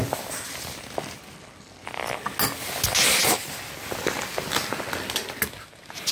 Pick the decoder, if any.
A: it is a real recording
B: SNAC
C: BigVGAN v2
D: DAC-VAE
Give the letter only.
A